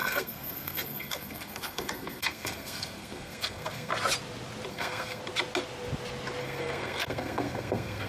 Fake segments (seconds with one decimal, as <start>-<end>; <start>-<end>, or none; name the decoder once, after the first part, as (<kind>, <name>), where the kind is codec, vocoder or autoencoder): 0.0-3.9 (codec, SNAC); 4.7-5.2; 6.4-8.1